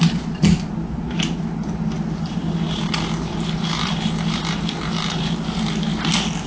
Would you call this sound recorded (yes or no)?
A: yes